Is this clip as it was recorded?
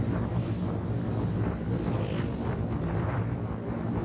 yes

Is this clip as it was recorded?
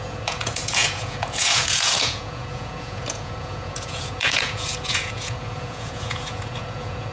no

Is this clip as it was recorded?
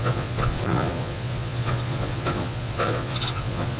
no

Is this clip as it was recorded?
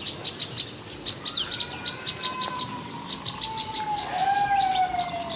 yes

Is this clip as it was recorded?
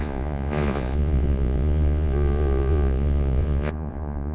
no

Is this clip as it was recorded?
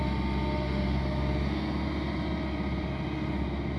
yes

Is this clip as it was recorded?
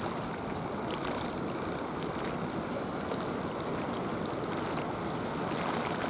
yes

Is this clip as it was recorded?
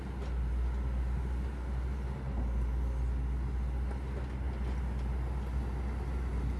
yes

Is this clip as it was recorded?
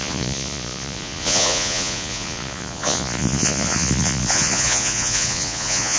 no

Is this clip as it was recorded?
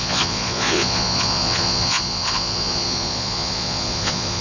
no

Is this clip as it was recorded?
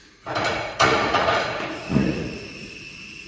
no